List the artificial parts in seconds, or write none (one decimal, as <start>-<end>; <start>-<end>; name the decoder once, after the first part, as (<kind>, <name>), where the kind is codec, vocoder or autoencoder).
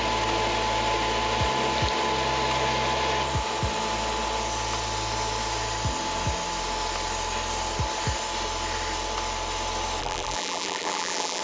10.0-11.4 (vocoder, BigVGAN v2)